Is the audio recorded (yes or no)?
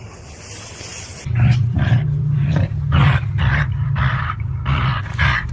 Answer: no